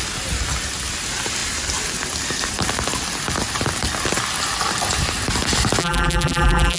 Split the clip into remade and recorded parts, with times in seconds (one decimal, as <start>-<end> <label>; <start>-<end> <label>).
0.0-5.8 recorded; 5.8-6.8 remade